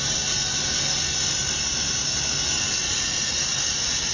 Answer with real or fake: real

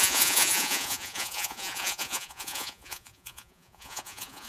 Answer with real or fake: fake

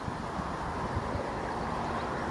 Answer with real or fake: real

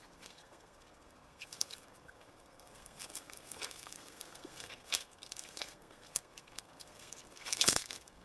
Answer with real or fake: fake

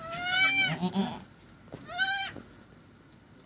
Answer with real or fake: real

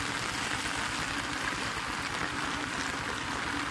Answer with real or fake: real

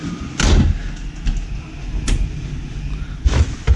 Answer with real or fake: real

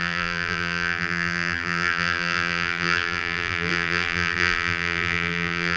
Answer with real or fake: fake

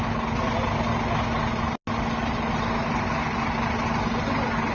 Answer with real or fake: real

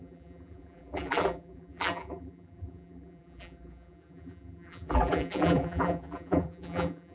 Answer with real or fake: fake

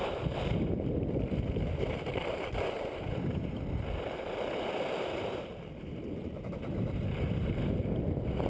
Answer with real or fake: fake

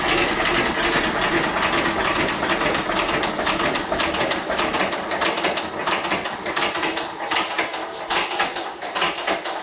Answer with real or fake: real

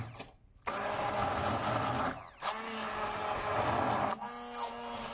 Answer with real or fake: real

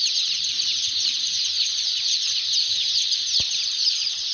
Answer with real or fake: fake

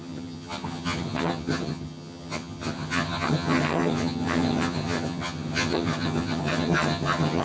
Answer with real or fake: fake